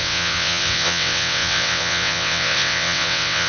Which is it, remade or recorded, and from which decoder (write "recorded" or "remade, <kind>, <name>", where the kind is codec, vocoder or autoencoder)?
remade, vocoder, WaveNeXt